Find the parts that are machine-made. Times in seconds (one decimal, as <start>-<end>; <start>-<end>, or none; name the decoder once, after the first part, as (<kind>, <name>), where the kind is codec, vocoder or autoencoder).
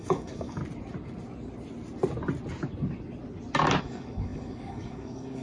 0.0-0.6 (codec, DAC); 3.8-5.4